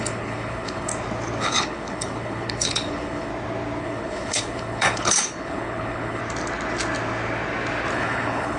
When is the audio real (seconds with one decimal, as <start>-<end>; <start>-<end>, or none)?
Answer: 0.9-1.4; 3.3-3.8; 6.2-7.9